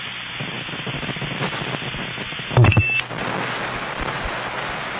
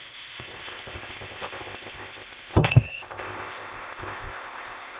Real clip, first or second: first